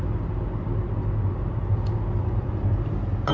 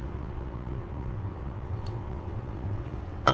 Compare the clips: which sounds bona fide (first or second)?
first